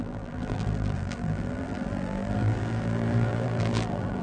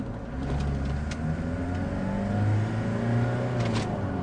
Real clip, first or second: second